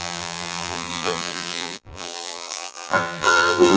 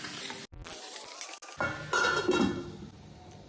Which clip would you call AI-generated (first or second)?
first